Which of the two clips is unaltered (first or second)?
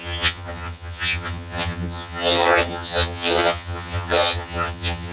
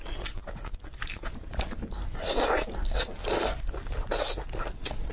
second